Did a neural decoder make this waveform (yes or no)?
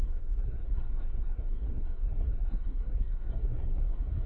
yes